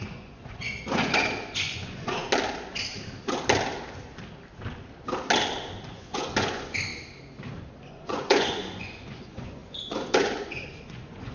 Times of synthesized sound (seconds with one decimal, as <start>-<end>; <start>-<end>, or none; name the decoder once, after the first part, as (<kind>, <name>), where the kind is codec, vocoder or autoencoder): 0.0-2.2 (vocoder, Vocos); 5.9-6.9; 7.8-11.3